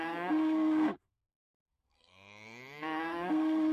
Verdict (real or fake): fake